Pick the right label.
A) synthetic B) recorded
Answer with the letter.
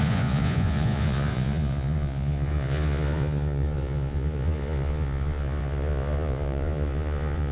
A